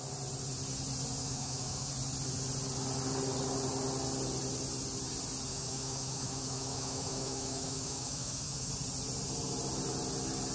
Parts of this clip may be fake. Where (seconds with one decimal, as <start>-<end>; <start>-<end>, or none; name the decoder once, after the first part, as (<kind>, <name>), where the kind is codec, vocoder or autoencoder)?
1.2-1.9 (autoencoder, DAC-VAE); 5.5-8.7